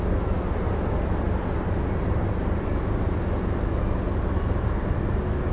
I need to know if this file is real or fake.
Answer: real